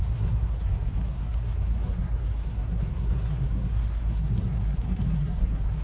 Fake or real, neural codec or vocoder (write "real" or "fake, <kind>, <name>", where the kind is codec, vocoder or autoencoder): fake, codec, SNAC